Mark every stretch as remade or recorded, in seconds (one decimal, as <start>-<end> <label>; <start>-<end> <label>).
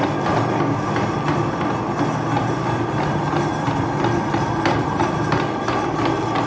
0.0-6.5 recorded